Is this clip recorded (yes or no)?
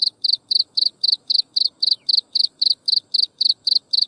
no